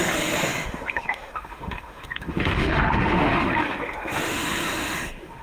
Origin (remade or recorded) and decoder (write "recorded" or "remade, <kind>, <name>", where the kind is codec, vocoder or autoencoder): remade, autoencoder, DAC-VAE